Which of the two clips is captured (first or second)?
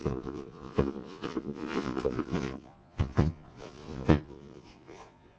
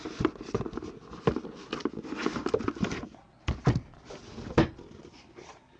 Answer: second